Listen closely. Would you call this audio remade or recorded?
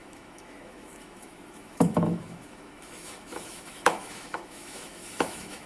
remade